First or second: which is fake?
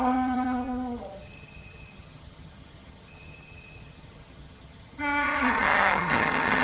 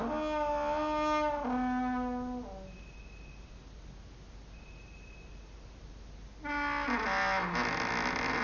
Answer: first